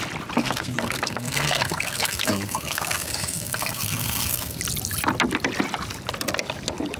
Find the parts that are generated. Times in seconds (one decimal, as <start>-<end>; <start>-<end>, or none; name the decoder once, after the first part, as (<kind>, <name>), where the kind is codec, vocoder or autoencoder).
0.4-4.6 (codec, SNAC)